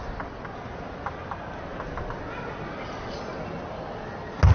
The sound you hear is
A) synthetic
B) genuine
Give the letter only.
B